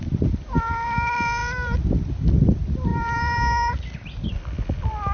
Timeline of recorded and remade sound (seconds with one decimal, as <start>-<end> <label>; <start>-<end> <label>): 0.0-2.9 recorded; 2.9-3.7 remade; 3.7-5.1 recorded